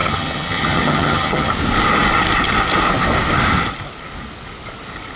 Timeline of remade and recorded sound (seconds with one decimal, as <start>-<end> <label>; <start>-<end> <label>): 0.0-1.5 remade; 1.5-5.2 recorded

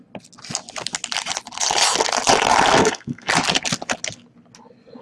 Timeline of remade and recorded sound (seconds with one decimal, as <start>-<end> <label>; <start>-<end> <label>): 0.0-2.7 recorded; 2.7-3.3 remade; 3.3-5.0 recorded

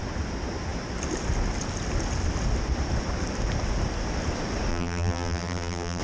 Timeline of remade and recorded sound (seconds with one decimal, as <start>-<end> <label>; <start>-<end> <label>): 0.0-4.7 recorded; 4.7-6.0 remade

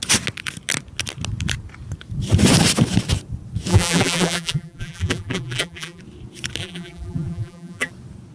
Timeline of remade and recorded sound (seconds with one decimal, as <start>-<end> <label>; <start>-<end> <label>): 0.0-3.7 recorded; 3.7-6.0 remade; 6.0-6.6 recorded; 6.6-7.9 remade; 7.9-8.3 recorded

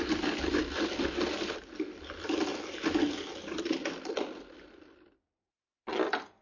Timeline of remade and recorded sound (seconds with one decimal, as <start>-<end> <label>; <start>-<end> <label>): 0.0-6.4 recorded

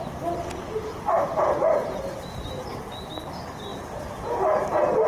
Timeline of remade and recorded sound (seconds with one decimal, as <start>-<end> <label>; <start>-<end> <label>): 0.0-0.9 recorded; 0.9-3.1 remade; 3.1-3.7 recorded; 3.7-4.3 remade; 4.3-5.1 recorded

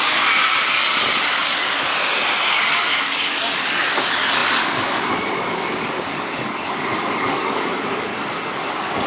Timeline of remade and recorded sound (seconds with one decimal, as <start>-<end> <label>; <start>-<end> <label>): 0.0-1.9 remade; 1.9-2.5 recorded; 2.5-8.1 remade; 8.1-8.7 recorded; 8.7-9.1 remade

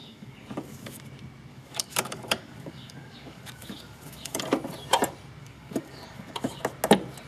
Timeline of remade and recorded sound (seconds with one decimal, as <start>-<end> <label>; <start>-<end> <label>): 0.0-1.0 remade; 1.0-1.5 recorded; 1.5-4.4 remade; 4.4-5.4 recorded; 5.4-6.6 remade; 6.6-7.3 recorded